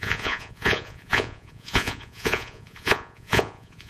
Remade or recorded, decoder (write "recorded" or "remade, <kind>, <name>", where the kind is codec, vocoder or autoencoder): remade, vocoder, Vocos